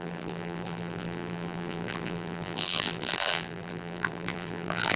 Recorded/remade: remade